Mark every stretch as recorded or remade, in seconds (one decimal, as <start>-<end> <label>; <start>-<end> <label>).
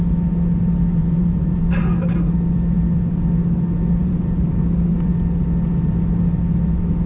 0.0-1.0 recorded; 1.0-1.6 remade; 1.6-4.0 recorded; 4.0-4.6 remade; 4.6-7.1 recorded